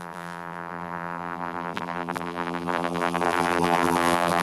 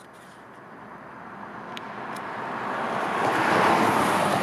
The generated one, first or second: first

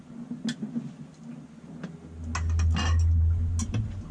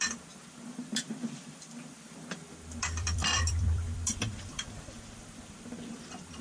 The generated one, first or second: second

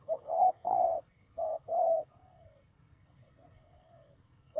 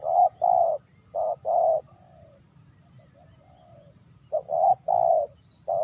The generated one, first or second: first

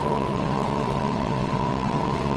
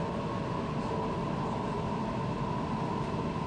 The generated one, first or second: first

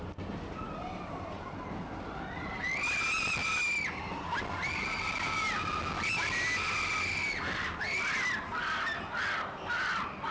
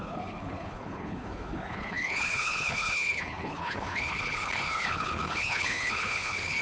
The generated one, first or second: second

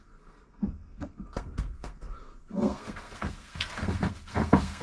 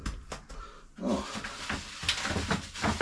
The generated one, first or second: first